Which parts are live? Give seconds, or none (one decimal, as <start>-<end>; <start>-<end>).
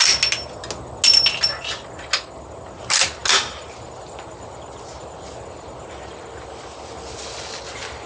0.0-8.1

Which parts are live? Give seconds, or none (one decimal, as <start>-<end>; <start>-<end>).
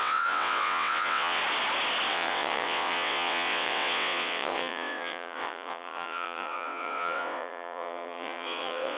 1.4-2.1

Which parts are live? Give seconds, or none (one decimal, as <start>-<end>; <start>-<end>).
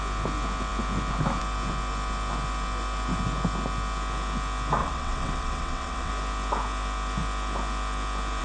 0.0-4.8; 6.1-8.4